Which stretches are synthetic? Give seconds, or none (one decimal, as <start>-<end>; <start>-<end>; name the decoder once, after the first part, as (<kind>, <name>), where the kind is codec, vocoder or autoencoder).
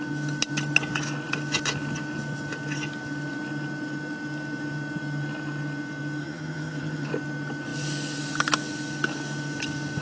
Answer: 6.2-7.1 (vocoder, HiFi-GAN)